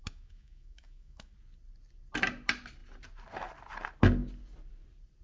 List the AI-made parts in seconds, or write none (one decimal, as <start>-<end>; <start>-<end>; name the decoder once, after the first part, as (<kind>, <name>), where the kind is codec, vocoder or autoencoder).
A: 0.0-1.3 (autoencoder, DAC-VAE)